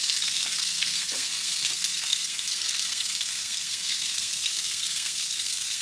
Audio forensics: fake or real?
fake